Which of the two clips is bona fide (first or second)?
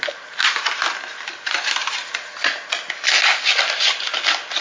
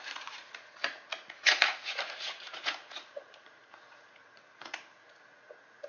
first